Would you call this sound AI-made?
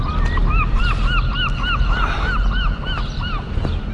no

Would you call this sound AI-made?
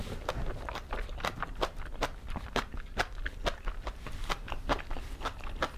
no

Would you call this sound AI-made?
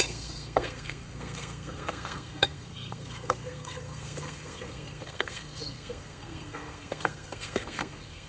yes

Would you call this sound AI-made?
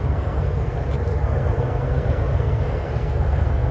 yes